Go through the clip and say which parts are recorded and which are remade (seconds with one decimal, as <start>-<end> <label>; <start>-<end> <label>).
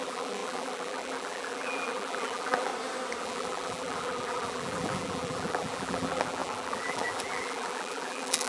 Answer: 0.0-2.7 remade; 2.7-3.2 recorded; 3.2-8.5 remade